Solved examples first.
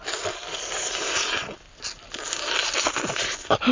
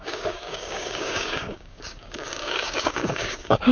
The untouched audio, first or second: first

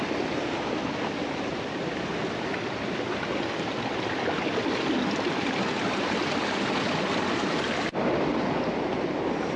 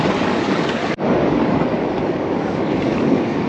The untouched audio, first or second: first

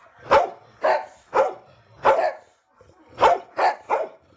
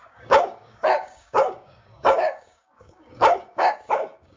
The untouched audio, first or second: first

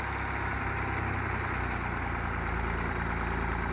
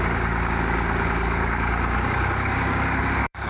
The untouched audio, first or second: first